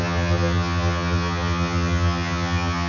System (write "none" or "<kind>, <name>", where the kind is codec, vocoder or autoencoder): vocoder, HiFi-GAN